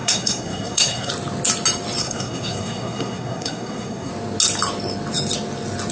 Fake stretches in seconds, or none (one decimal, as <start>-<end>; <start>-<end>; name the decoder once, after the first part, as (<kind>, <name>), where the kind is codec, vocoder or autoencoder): 0.0-1.1 (codec, SNAC); 2.0-4.1